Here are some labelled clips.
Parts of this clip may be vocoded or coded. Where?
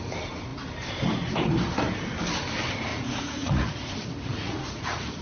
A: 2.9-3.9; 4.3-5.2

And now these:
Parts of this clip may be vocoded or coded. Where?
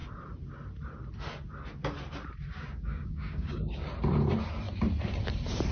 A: 2.5-3.9